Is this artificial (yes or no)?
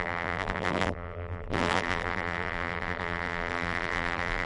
yes